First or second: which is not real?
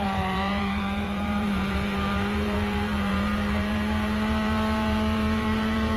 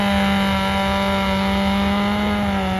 first